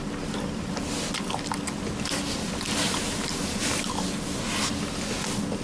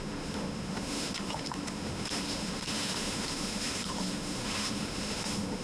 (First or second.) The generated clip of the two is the second